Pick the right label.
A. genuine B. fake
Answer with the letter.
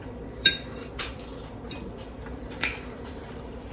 B